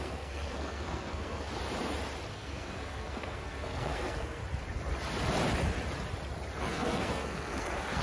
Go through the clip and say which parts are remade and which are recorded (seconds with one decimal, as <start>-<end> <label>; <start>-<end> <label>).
0.0-1.5 remade; 1.5-2.3 recorded; 2.3-4.4 remade; 4.4-6.6 recorded; 6.6-8.0 remade